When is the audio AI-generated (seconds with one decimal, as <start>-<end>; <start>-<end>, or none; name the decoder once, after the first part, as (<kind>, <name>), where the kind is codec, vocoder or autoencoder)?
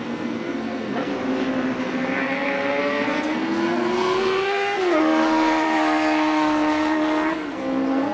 0.0-1.1 (codec, SNAC); 1.8-8.1